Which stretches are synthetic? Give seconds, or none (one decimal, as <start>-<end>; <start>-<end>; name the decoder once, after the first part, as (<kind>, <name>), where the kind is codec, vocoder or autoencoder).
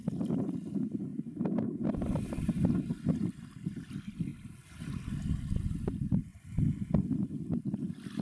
0.5-6.3 (vocoder, BigVGAN v2); 7.1-8.2